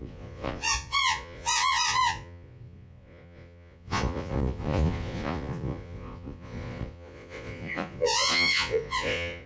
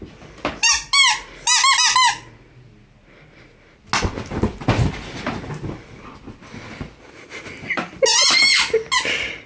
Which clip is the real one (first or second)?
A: second